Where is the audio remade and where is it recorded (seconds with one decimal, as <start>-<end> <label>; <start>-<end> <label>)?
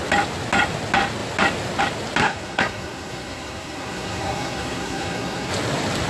0.0-2.2 recorded; 2.2-5.5 remade; 5.5-6.1 recorded